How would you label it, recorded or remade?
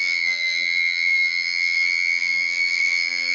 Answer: remade